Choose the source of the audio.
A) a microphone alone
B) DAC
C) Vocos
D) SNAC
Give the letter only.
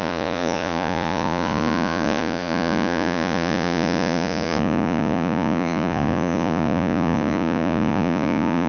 C